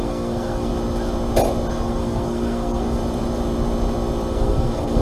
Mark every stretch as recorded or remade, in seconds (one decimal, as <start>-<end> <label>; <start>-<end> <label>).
0.0-0.7 remade; 0.7-1.7 recorded; 1.7-3.0 remade; 3.0-4.3 recorded; 4.3-5.0 remade